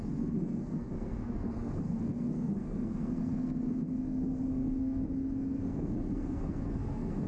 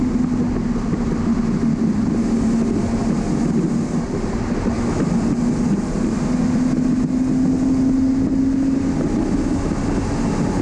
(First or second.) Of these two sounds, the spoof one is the first